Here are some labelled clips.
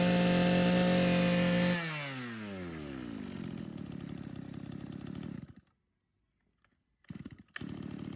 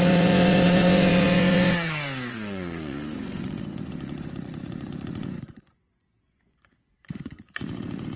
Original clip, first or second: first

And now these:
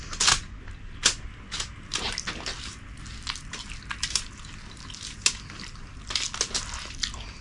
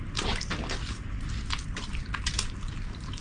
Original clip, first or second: first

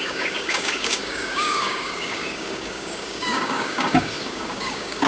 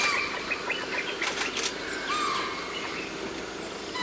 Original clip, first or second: second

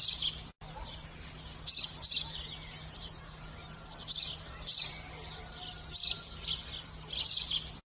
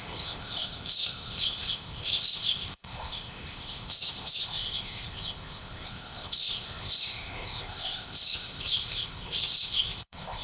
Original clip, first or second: first